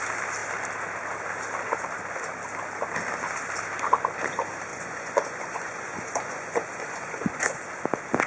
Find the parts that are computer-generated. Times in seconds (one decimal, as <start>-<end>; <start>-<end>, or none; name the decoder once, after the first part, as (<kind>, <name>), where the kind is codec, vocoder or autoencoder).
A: 4.7-7.6 (vocoder, Vocos)